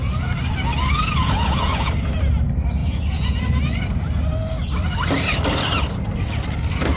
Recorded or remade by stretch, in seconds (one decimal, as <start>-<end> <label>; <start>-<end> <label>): 0.0-1.2 recorded; 1.2-1.9 remade; 1.9-2.8 recorded; 2.8-3.4 remade; 3.4-7.0 recorded